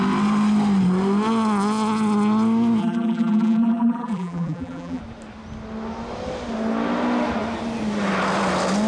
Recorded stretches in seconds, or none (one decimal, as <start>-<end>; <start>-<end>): 0.0-2.8; 5.0-8.9